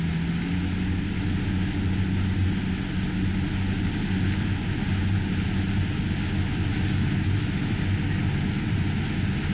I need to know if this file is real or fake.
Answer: real